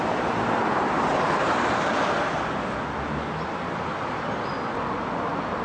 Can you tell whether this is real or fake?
real